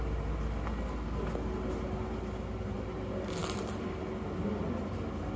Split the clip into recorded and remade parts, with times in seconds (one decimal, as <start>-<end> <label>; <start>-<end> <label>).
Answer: 0.0-5.4 recorded